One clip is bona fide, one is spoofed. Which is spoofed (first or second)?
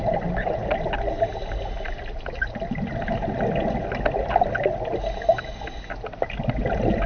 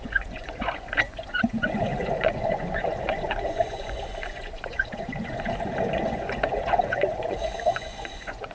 second